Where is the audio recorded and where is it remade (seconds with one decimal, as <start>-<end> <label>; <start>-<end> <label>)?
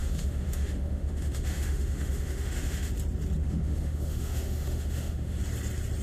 0.0-2.9 remade; 2.9-3.4 recorded; 3.4-5.4 remade; 5.4-6.0 recorded